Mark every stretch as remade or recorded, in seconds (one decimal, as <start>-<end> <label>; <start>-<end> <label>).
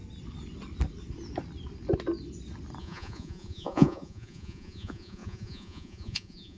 0.0-2.8 recorded; 2.8-6.6 remade